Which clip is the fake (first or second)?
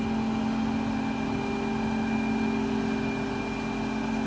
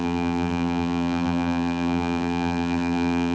second